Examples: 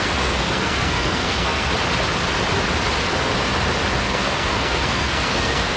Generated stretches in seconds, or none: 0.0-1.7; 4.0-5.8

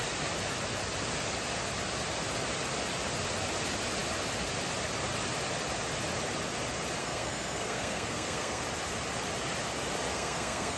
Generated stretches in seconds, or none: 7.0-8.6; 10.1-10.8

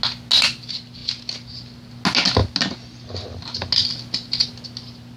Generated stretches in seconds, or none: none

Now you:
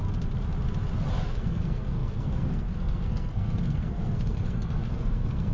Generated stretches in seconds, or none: 1.3-5.5

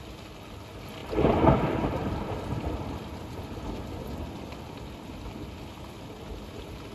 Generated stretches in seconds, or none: none

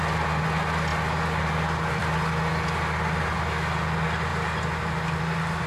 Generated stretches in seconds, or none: none